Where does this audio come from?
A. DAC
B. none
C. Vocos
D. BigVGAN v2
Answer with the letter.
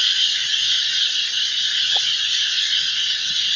C